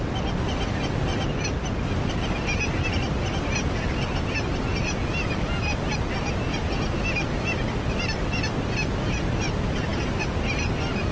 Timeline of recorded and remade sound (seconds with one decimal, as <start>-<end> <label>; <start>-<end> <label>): 0.0-11.1 recorded